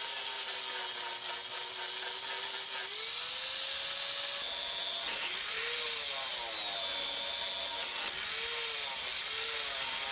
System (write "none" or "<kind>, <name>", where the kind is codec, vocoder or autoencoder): none